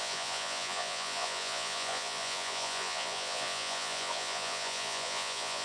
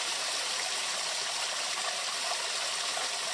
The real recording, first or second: second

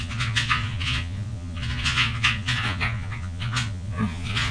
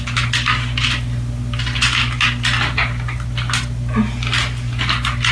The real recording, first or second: second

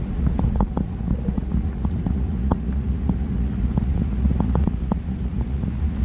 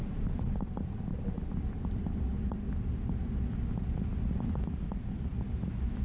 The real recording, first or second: second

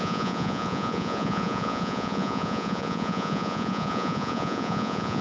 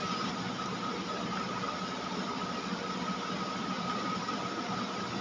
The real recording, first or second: second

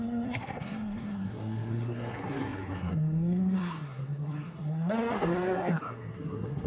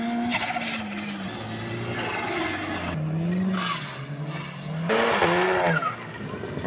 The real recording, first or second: second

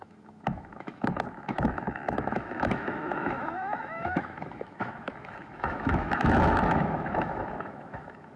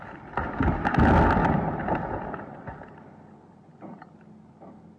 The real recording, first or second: second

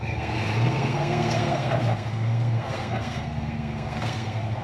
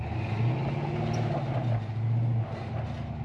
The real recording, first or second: second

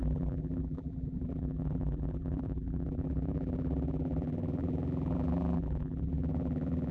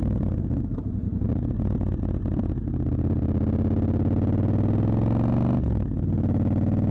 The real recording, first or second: second